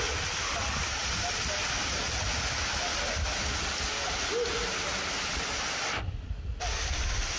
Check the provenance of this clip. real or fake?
real